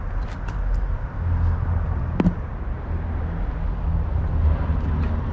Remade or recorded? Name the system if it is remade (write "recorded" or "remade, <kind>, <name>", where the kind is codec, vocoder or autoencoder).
recorded